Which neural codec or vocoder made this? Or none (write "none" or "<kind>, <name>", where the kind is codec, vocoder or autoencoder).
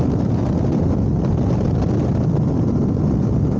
none